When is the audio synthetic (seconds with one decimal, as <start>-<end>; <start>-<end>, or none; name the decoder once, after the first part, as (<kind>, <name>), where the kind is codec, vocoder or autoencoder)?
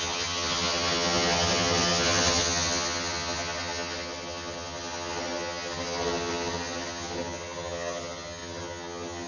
0.0-9.3 (vocoder, HiFi-GAN)